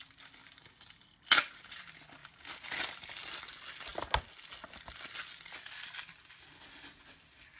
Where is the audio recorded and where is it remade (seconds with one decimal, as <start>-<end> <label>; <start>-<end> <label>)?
0.0-0.4 recorded; 0.4-0.9 remade; 0.9-7.6 recorded